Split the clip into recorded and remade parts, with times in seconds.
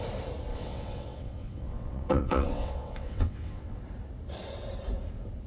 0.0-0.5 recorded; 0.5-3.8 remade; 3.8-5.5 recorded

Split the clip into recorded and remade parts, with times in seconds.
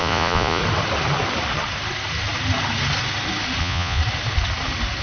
0.0-0.6 remade; 0.6-3.6 recorded; 3.6-4.0 remade; 4.0-5.0 recorded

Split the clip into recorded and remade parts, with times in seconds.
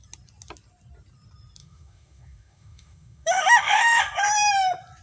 0.0-1.6 recorded; 1.6-4.0 remade; 4.0-5.0 recorded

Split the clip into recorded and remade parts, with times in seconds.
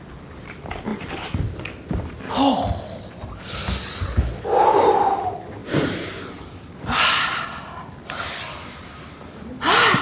0.0-0.9 recorded; 0.9-2.3 remade; 2.3-5.6 recorded; 5.6-6.2 remade; 6.2-10.0 recorded